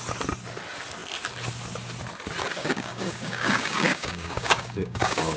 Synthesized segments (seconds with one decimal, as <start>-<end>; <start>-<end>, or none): 2.6-5.4